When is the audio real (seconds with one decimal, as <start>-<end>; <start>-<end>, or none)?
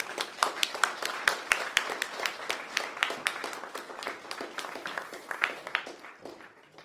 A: 0.0-0.4; 2.2-3.4